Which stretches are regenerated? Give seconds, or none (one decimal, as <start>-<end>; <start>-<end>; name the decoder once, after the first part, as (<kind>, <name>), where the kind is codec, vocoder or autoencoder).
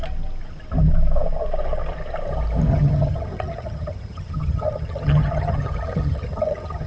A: 2.7-6.9 (vocoder, HiFi-GAN)